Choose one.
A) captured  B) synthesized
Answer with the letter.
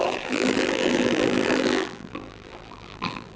B